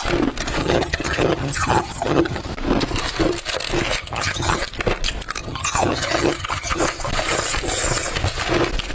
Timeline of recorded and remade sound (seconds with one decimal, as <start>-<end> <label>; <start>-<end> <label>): 0.0-0.6 recorded; 0.6-2.5 remade; 2.5-4.0 recorded; 4.0-4.6 remade; 4.6-5.4 recorded; 5.4-6.8 remade; 6.8-8.9 recorded